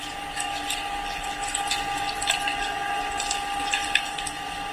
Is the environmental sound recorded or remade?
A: recorded